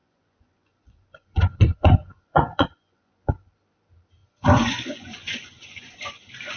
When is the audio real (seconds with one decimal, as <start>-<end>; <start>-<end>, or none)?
3.3-4.2